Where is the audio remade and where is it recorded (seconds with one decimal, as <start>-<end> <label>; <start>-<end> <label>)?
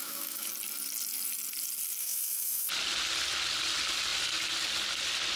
0.0-0.5 remade; 0.5-2.0 recorded; 2.0-2.7 remade; 2.7-5.4 recorded